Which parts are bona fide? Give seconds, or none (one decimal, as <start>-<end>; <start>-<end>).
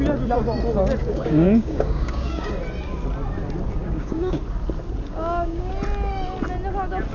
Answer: 0.0-1.0; 2.5-3.8; 4.4-5.1; 5.7-7.1